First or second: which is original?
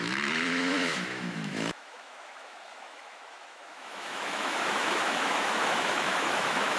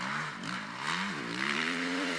second